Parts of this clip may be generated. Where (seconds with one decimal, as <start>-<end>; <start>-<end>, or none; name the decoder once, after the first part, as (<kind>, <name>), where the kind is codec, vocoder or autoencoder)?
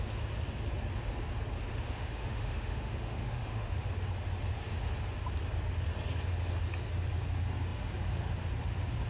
1.7-3.9 (autoencoder, DAC-VAE)